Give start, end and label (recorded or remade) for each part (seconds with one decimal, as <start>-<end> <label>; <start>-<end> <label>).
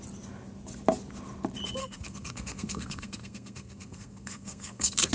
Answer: 0.0-1.8 recorded; 1.8-5.1 remade